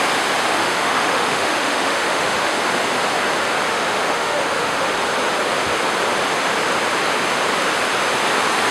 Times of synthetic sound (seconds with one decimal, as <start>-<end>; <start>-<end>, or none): 0.5-2.6; 3.7-4.9